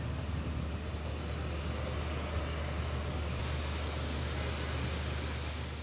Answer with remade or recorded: recorded